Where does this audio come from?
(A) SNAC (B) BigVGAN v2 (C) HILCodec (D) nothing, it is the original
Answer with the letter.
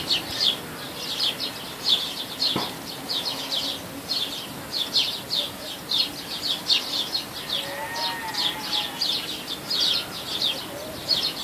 D